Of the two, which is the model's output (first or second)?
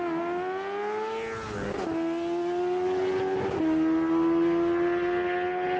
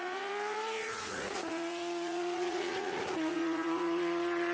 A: second